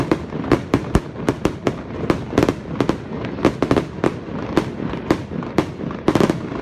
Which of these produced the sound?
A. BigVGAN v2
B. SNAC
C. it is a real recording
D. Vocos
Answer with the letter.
C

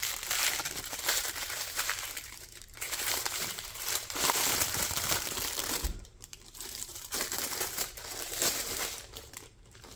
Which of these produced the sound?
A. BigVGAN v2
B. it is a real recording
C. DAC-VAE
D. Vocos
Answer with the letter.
A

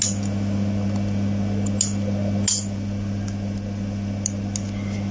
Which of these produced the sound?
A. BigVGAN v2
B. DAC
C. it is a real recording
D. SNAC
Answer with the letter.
C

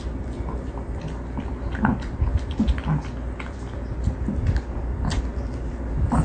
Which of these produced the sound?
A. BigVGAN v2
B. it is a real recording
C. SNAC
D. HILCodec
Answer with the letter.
B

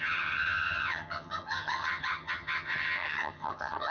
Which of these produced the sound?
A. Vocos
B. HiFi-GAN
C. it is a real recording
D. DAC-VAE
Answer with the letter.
B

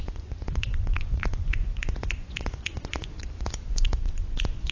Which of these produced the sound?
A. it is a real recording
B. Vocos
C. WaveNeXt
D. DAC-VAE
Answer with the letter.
B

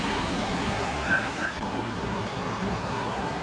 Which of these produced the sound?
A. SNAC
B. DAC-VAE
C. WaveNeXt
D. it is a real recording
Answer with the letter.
A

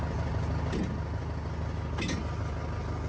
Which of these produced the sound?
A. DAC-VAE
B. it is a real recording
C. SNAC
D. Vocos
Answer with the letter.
B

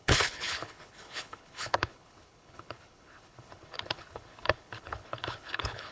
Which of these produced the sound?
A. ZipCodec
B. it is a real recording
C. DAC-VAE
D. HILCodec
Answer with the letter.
D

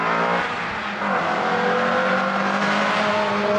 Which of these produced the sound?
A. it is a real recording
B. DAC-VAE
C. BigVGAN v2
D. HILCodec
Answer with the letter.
A